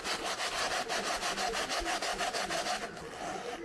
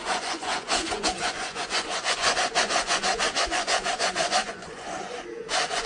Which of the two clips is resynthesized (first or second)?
second